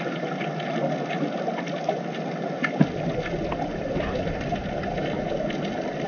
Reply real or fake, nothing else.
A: real